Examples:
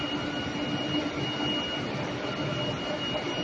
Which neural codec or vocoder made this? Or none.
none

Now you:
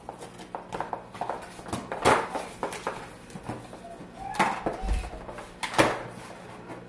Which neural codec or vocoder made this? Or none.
none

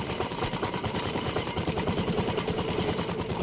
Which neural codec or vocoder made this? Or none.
vocoder, BigVGAN v2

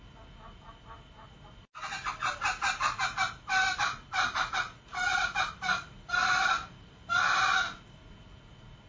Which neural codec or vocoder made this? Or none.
none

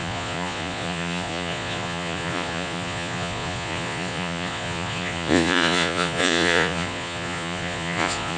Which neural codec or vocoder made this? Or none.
vocoder, Vocos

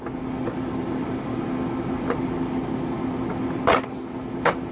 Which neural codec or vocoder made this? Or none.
none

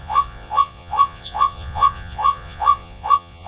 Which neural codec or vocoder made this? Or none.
vocoder, Vocos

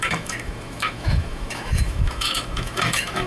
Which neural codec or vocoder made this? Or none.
autoencoder, DAC-VAE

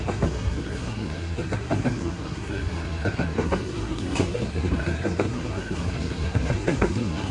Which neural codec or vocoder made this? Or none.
codec, SNAC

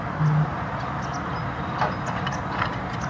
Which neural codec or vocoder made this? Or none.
none